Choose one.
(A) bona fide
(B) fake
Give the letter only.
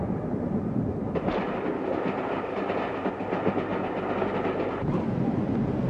A